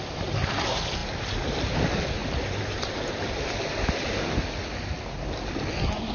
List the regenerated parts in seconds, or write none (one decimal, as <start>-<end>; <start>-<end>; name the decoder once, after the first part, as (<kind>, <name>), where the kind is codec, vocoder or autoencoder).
2.2-3.3 (vocoder, BigVGAN v2)

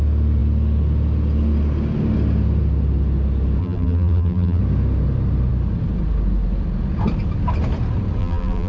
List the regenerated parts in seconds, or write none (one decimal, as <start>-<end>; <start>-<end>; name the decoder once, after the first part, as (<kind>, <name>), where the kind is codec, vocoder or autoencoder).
3.6-4.6 (vocoder, BigVGAN v2); 8.2-8.7

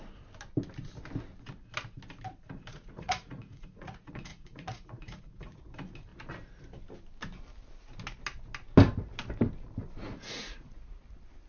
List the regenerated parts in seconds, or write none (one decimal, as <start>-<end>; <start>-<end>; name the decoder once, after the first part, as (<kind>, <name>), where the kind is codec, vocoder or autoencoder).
2.7-5.6 (vocoder, Vocos); 10.0-10.9

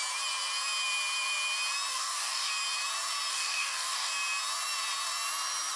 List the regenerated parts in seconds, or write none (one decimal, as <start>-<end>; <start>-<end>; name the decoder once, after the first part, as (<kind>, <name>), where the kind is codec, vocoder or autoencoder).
1.9-2.5 (codec, DAC); 3.3-4.1

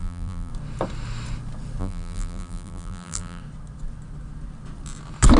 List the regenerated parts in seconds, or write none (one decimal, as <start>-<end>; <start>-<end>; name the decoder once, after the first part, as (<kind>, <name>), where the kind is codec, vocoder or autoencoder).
0.0-0.5 (vocoder, BigVGAN v2); 1.8-3.4

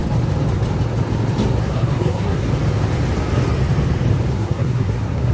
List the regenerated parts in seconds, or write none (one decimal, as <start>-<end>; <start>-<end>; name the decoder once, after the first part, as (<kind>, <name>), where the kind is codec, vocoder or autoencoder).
1.6-2.5 (codec, SNAC); 4.3-5.3